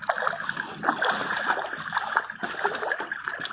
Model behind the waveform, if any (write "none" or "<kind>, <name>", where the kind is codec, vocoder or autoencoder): none